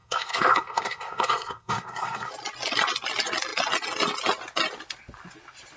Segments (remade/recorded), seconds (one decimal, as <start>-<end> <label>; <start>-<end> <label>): 0.0-2.3 remade; 2.3-5.8 recorded